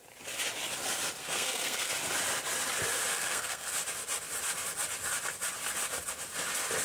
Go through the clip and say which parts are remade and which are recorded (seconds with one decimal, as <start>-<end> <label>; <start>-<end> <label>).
0.0-1.2 recorded; 1.2-1.9 remade; 1.9-3.1 recorded; 3.1-3.7 remade; 3.7-6.8 recorded